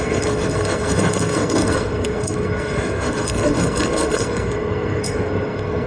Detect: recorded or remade remade